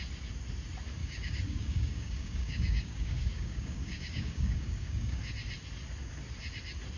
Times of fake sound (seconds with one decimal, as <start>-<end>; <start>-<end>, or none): 1.0-5.2